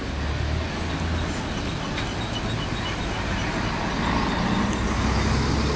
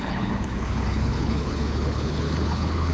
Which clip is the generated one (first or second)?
second